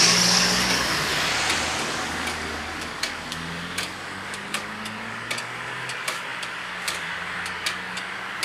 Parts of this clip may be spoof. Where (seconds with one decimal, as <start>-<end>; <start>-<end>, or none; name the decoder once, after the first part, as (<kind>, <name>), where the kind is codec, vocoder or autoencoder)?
0.0-1.1 (codec, DAC); 1.9-8.4